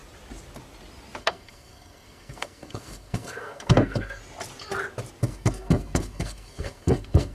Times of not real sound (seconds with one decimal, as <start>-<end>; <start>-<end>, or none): 1.2-4.2; 5.2-7.3